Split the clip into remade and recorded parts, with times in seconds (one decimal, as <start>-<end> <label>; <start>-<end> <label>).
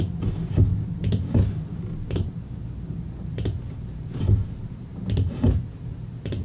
0.0-6.4 recorded